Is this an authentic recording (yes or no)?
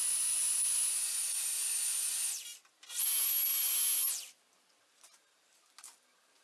yes